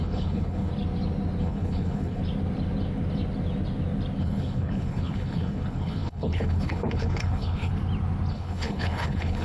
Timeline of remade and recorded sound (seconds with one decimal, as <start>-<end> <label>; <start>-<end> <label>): 0.0-0.7 remade; 0.7-1.4 recorded; 1.4-2.2 remade; 2.2-4.2 recorded; 4.2-7.7 remade; 7.7-8.3 recorded; 8.3-9.4 remade